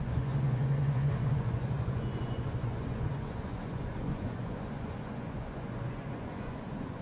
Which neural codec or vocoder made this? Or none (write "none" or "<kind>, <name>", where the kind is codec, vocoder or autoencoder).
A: vocoder, Vocos